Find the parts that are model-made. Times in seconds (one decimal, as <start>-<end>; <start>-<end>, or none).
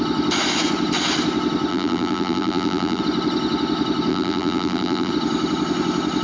1.7-3.0; 4.1-5.1